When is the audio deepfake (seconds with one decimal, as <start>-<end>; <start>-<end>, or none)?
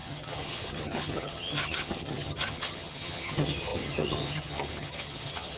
0.0-5.6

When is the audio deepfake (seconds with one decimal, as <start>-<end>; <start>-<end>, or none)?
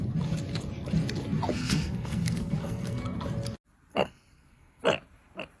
1.5-3.0; 3.9-4.8